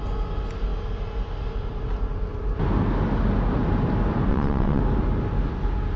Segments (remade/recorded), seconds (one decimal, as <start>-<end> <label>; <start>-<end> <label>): 0.0-4.3 recorded; 4.3-4.8 remade; 4.8-6.0 recorded